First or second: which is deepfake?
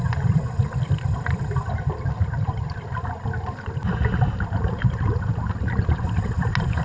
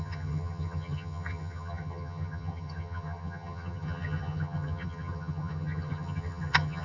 second